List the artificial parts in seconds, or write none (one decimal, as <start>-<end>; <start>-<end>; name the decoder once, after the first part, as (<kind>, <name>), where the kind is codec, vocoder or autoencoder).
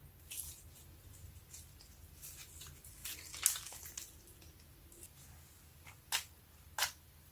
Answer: none